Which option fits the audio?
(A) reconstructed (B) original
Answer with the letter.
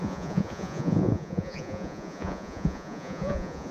A